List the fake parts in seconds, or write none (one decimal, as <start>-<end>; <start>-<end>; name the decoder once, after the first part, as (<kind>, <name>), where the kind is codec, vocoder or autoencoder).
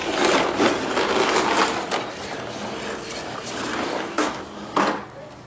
3.8-4.4 (codec, DAC)